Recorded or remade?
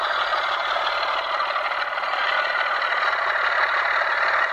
recorded